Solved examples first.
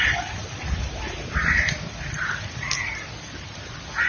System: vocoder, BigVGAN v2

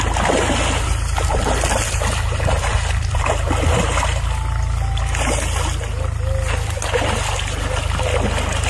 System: none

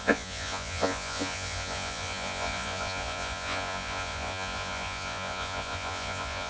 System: vocoder, Vocos